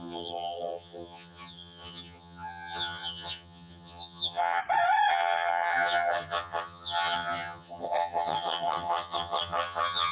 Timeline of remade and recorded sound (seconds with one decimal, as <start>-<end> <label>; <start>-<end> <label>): 0.0-4.6 remade; 4.6-5.1 recorded; 5.1-10.1 remade